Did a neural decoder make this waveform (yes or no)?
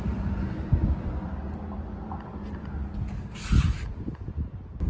no